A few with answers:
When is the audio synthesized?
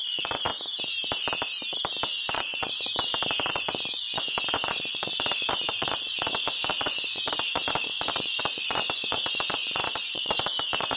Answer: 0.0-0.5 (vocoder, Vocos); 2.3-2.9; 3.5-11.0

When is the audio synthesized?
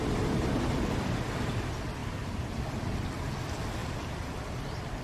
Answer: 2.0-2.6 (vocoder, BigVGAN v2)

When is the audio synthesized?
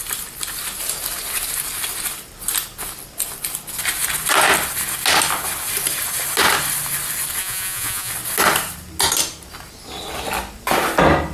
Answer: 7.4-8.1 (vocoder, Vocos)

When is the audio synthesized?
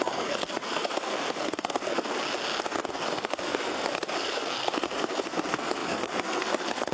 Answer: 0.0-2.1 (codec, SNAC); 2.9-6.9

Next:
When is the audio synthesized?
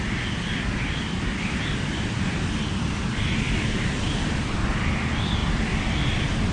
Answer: 0.0-5.4 (vocoder, BigVGAN v2)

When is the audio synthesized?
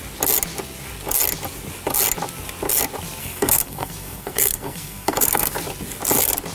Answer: 3.2-5.5 (codec, SNAC)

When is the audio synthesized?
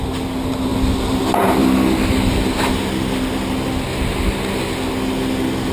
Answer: none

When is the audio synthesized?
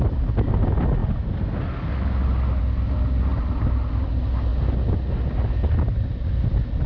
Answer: none